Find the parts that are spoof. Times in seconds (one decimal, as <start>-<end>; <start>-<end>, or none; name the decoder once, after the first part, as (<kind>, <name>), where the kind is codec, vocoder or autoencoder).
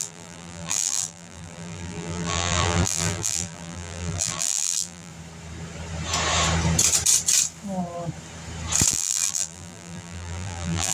0.0-5.1 (vocoder, BigVGAN v2); 8.9-10.9